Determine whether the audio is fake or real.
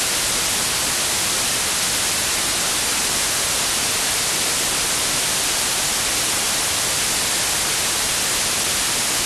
real